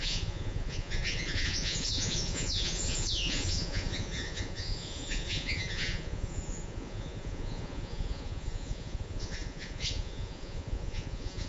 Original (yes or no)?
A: no